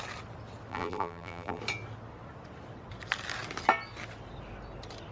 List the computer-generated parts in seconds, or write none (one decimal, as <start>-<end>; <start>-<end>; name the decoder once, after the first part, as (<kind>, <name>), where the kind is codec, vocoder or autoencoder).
0.7-1.6 (vocoder, BigVGAN v2)